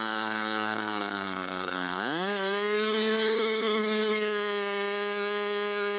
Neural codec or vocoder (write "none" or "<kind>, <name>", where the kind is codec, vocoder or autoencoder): codec, SNAC